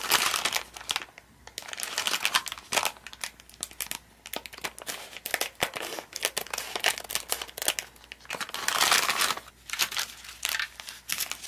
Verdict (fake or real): real